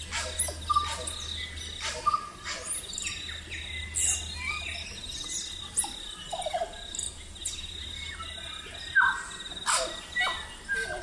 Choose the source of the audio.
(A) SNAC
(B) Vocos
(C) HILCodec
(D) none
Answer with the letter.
D